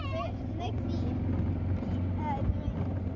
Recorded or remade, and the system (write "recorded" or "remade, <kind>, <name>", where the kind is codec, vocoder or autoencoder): recorded